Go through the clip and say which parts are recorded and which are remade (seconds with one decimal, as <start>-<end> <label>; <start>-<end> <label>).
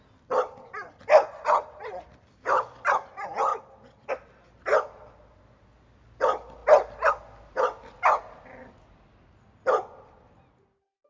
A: 0.0-11.1 recorded